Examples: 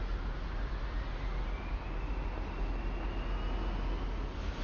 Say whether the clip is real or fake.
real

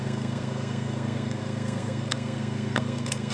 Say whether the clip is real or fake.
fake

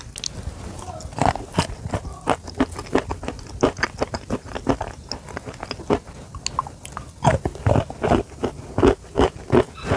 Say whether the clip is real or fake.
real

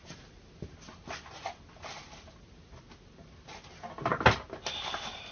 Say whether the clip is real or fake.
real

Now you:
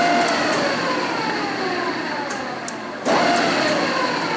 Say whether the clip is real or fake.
real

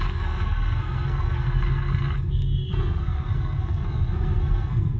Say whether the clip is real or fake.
fake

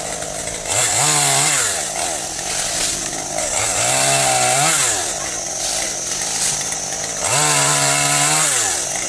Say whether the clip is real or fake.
real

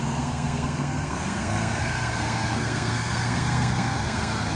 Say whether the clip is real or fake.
fake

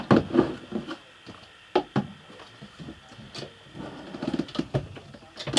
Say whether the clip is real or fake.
real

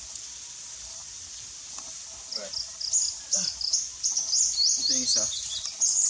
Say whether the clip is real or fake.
real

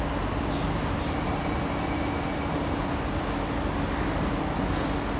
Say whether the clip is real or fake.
real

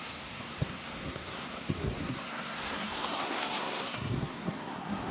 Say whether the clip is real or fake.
fake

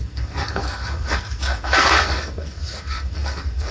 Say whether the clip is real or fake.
fake